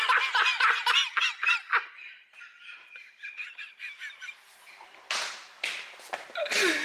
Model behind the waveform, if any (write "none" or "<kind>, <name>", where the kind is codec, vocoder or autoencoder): none